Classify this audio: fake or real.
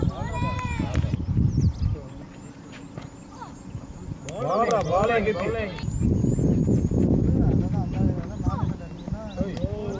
real